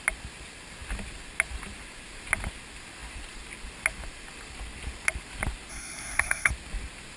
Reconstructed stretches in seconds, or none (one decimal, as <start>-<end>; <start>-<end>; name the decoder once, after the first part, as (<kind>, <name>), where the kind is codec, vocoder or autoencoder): 5.7-6.5 (codec, SNAC)